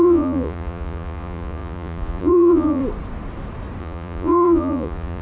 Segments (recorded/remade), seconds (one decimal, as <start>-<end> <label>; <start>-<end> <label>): 0.0-2.8 remade; 2.8-3.8 recorded; 3.8-5.2 remade